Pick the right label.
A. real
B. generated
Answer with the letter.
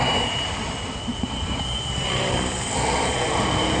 B